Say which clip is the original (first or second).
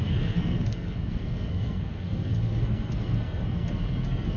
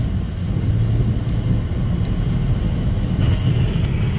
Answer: second